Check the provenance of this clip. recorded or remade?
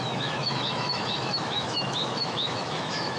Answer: remade